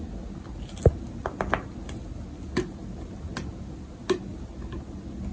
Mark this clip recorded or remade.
recorded